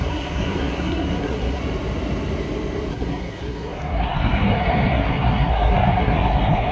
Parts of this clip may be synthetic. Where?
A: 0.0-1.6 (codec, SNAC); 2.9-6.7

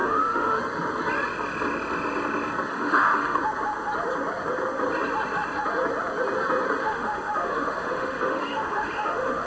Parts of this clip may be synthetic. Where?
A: 0.0-0.6 (autoencoder, DAC-VAE); 2.7-3.4; 6.8-9.5

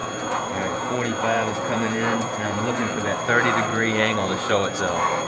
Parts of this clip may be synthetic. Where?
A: 0.0-3.2 (vocoder, Vocos); 3.7-4.8

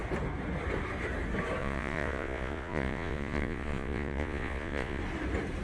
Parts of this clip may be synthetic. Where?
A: 1.6-5.0 (vocoder, Vocos)

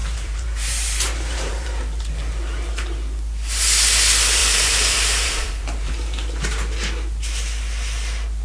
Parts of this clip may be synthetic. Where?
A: 0.0-1.8 (vocoder, BigVGAN v2); 4.4-5.9

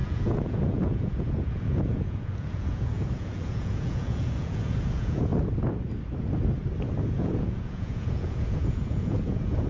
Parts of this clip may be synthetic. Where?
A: 0.0-5.3 (vocoder, Vocos); 7.1-9.7